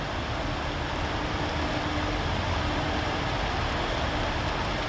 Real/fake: real